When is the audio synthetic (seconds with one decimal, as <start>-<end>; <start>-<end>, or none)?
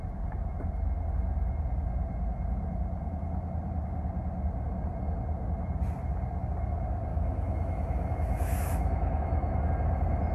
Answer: 7.1-9.7